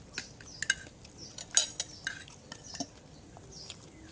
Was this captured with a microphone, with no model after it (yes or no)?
yes